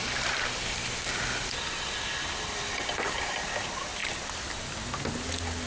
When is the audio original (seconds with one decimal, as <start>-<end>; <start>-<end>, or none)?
0.0-5.7